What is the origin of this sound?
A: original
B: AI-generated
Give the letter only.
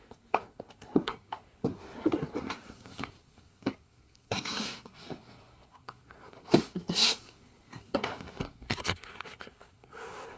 B